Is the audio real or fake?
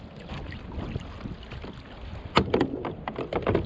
real